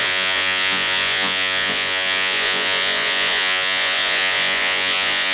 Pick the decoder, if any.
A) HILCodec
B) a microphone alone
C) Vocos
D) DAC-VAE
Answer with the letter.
C